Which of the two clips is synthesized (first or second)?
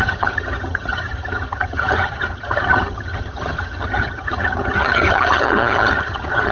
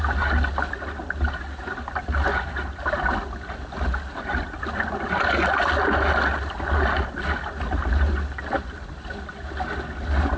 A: first